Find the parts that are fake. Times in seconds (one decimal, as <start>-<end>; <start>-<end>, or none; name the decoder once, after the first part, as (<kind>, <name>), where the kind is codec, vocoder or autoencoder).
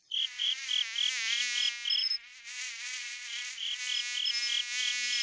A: 0.0-0.7 (vocoder, Vocos); 2.0-3.8